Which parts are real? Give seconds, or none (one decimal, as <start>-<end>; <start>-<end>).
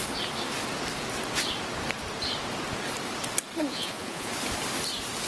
0.0-3.7; 4.3-5.3